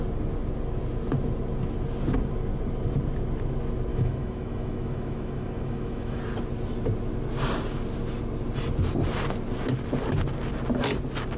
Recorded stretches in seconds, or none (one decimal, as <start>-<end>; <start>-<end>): 0.0-3.9; 6.2-11.4